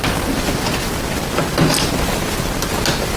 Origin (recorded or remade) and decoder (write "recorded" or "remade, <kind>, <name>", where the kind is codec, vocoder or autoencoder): recorded